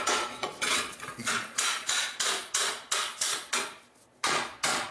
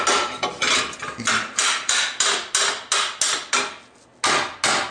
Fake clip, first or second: first